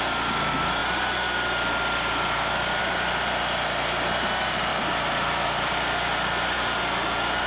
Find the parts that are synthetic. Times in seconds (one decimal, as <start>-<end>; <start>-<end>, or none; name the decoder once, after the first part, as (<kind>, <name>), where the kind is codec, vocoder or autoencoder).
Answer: 4.7-6.3 (vocoder, BigVGAN v2)